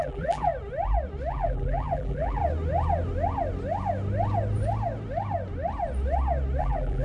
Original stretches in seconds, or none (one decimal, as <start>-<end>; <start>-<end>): 0.5-1.3; 2.4-6.6